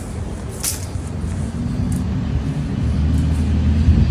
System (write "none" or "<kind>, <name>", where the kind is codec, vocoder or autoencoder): none